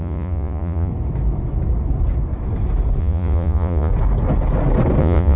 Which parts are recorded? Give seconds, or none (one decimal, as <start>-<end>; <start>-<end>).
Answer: 0.9-3.0; 3.9-5.0